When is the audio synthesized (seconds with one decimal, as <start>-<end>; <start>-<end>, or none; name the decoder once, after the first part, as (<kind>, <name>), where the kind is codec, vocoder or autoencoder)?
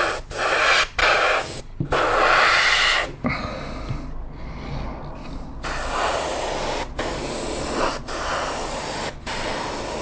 1.0-1.6 (codec, DAC)